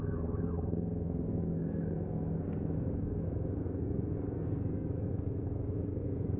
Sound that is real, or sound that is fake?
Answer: fake